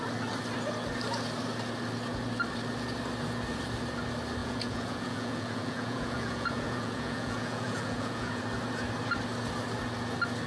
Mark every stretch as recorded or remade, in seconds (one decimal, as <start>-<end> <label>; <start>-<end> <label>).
0.0-4.4 recorded; 4.4-8.4 remade; 8.4-10.5 recorded